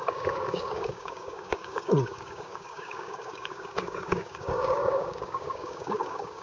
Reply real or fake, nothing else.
fake